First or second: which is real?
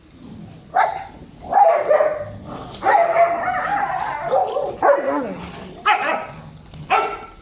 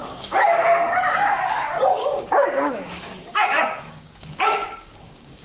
first